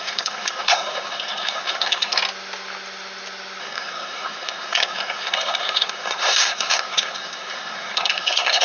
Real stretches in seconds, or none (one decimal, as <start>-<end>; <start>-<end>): 2.2-3.6